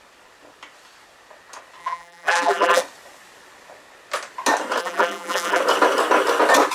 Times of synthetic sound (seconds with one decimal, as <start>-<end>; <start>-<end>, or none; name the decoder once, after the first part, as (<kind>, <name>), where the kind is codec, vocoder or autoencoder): 1.8-2.8 (vocoder, BigVGAN v2); 4.8-5.6

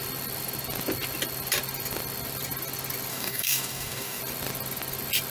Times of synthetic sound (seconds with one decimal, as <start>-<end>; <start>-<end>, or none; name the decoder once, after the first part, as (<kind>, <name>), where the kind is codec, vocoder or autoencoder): 3.1-4.2 (codec, DAC)

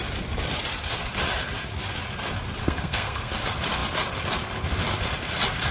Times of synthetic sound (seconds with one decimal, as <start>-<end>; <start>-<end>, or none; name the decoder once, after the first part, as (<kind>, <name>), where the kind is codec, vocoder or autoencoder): 2.6-3.3 (codec, SNAC)

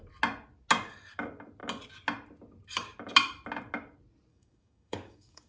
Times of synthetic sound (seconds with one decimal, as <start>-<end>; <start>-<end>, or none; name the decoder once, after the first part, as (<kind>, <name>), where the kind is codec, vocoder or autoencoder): 4.3-5.5 (codec, DAC)

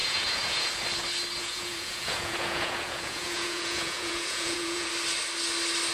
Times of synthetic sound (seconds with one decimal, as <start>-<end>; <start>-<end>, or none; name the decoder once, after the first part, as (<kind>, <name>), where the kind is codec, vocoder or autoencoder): 0.0-0.7 (vocoder, Vocos); 1.4-4.9